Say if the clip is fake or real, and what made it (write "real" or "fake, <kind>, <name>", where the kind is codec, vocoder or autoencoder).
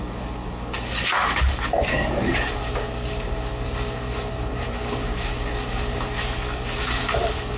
fake, codec, DAC